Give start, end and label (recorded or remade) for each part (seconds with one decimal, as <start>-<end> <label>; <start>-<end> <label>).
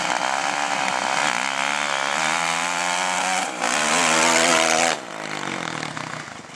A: 0.0-6.5 recorded